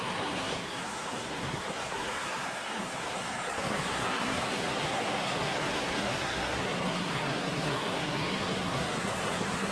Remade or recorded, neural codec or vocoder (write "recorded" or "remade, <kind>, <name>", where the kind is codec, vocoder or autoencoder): remade, codec, SNAC